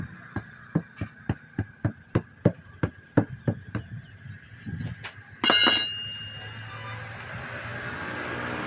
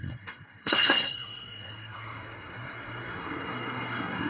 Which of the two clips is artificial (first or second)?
second